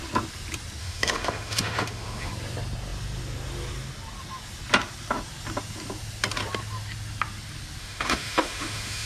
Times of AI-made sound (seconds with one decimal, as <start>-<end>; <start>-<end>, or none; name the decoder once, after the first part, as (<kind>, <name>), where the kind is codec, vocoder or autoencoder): 0.8-2.3 (autoencoder, DAC-VAE); 7.8-9.1